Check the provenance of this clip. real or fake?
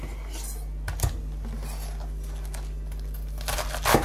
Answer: real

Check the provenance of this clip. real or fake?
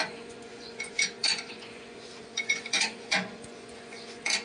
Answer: fake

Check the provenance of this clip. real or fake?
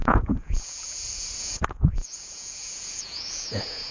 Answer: fake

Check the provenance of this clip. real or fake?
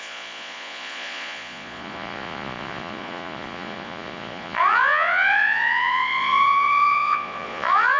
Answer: fake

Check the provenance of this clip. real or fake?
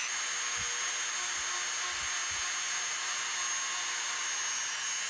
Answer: real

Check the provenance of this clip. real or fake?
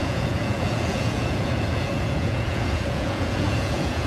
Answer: fake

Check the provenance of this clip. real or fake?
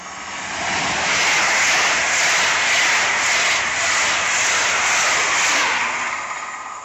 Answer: real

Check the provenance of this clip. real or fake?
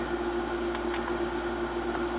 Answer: real